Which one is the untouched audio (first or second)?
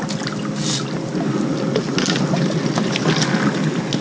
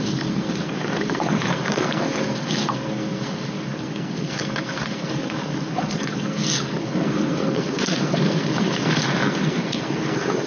first